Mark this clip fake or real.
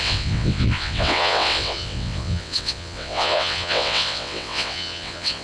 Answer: fake